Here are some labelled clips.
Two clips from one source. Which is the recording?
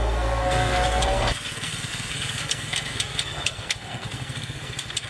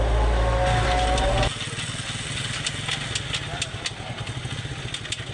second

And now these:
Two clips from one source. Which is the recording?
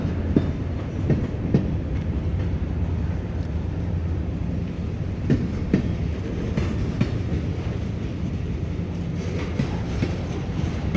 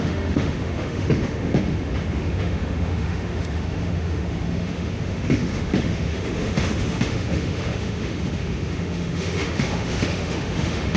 first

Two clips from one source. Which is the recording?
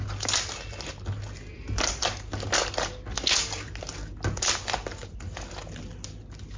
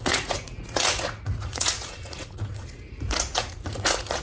first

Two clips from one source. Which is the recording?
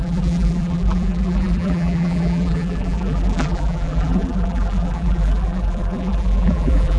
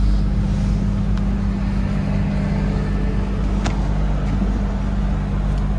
second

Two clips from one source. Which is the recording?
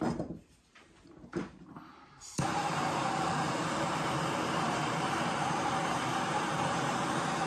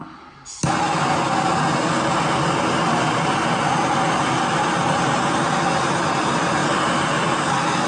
second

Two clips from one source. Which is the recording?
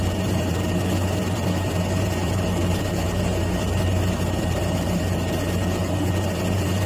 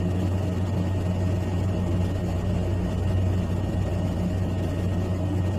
second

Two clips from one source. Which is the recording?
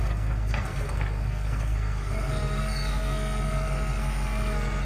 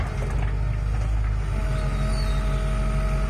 second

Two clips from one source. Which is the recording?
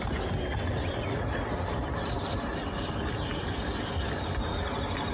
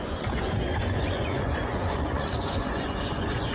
first